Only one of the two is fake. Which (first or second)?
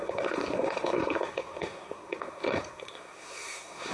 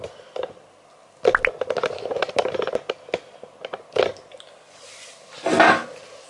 first